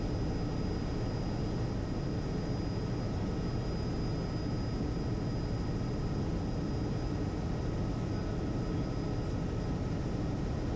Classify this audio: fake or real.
real